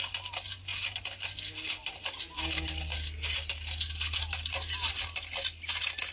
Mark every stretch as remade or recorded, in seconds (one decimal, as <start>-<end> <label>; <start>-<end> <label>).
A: 0.0-6.1 recorded